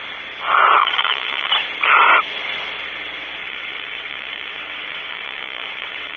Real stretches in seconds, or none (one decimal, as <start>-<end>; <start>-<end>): 0.0-0.8; 1.5-3.4